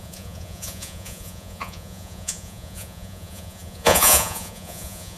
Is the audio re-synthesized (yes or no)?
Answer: yes